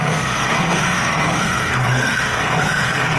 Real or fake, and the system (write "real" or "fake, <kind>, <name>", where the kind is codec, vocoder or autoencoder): fake, codec, SNAC